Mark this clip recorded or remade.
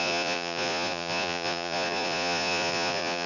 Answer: remade